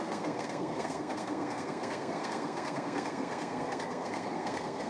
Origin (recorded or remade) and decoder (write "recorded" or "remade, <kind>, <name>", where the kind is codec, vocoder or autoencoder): remade, codec, SNAC